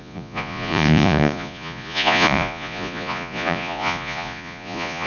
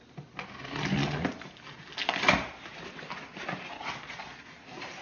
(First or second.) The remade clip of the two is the first